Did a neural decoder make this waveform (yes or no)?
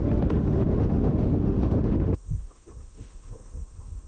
yes